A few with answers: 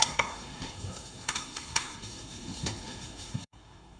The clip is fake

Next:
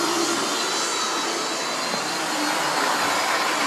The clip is real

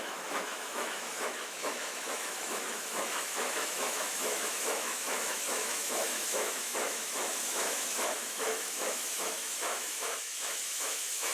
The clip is fake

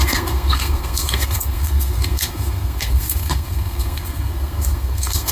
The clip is fake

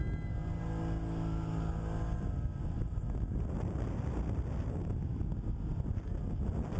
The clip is real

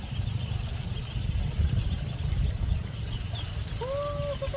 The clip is real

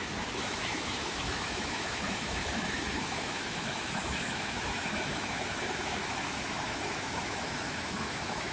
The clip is fake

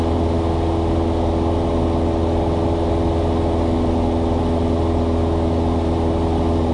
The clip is real